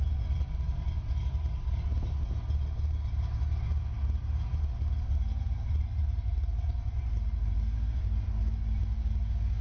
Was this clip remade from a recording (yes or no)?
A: no